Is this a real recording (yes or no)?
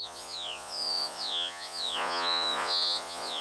no